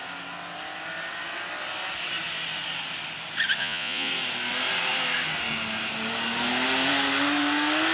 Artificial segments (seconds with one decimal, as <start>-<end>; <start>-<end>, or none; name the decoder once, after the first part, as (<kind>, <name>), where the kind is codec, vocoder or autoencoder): 3.6-4.1 (vocoder, Vocos)